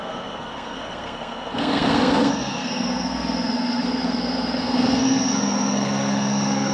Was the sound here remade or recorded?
remade